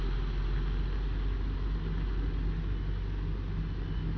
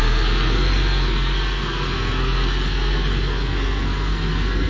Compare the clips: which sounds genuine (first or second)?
first